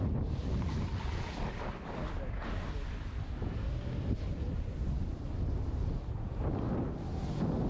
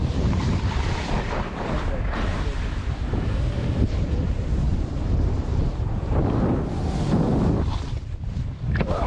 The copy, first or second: second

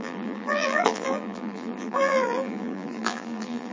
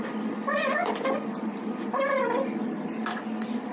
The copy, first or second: first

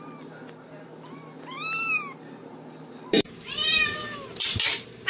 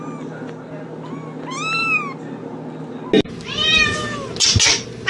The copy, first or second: first